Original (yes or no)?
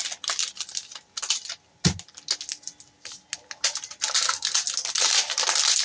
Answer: yes